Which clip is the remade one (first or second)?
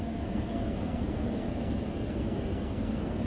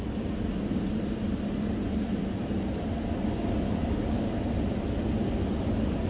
first